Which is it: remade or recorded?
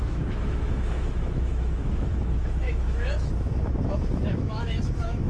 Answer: remade